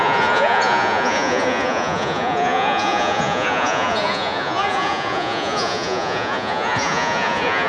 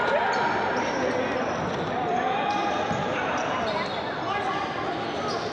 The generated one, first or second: first